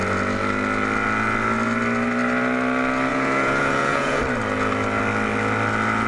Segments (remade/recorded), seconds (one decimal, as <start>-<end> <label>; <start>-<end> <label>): 0.0-3.1 recorded; 3.1-4.2 remade; 4.2-6.1 recorded